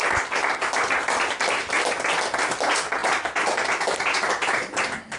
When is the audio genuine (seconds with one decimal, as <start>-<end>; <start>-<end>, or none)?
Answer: 0.0-5.2